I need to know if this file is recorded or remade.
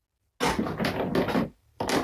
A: recorded